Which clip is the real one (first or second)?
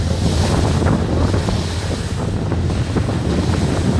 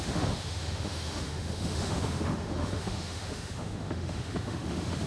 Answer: first